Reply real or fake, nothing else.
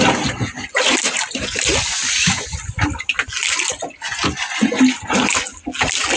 real